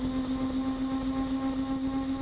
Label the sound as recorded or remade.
recorded